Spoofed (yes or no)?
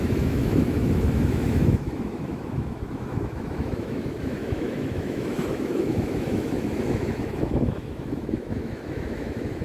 yes